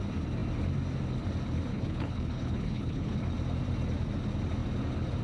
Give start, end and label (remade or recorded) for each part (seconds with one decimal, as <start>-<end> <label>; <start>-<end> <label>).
0.0-1.7 recorded; 1.7-3.2 remade; 3.2-5.2 recorded